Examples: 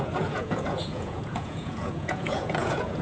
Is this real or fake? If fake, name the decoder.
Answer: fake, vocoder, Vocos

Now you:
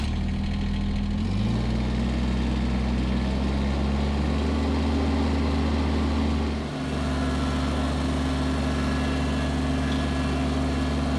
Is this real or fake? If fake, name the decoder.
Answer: real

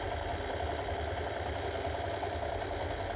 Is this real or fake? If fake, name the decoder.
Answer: real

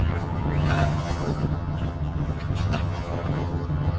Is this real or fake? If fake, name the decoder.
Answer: fake, vocoder, HiFi-GAN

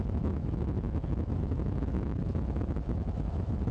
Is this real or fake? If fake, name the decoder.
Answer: fake, autoencoder, DAC-VAE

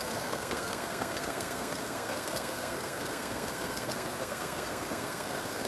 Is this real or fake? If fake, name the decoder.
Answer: fake, codec, SNAC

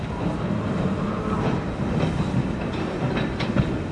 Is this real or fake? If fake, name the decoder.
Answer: real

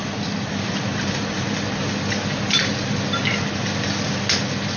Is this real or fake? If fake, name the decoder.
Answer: real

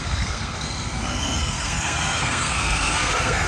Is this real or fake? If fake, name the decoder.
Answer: fake, codec, SNAC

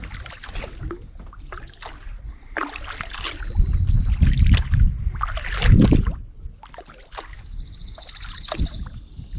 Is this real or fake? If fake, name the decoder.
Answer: real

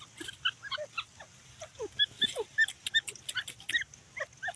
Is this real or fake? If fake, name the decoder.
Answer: real